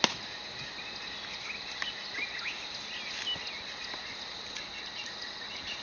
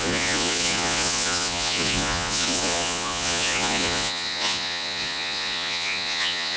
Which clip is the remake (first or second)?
second